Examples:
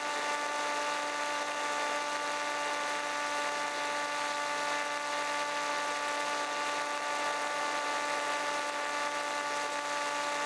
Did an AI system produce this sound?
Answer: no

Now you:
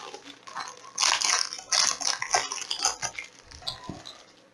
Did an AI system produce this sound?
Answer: no